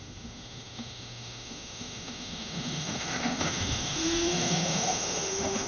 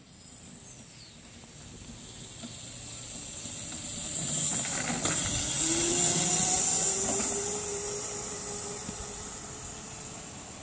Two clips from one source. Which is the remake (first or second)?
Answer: first